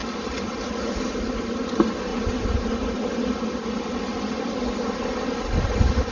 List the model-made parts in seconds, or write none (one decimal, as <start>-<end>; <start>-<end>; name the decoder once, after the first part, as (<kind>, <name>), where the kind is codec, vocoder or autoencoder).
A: none